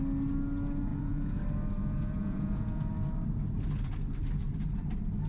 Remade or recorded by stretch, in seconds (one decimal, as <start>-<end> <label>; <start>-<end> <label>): 0.0-0.9 recorded; 0.9-1.4 remade; 1.4-1.8 recorded; 1.8-2.9 remade; 2.9-5.3 recorded